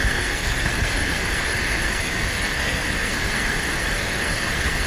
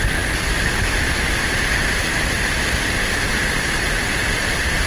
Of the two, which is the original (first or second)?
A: second